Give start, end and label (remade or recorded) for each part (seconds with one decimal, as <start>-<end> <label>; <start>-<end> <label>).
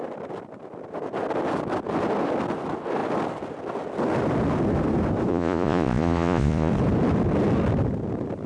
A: 0.0-5.3 recorded; 5.3-6.7 remade; 6.7-8.5 recorded